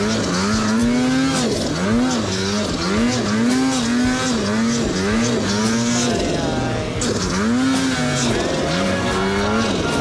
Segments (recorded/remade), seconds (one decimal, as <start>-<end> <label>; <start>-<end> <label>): 0.0-10.0 recorded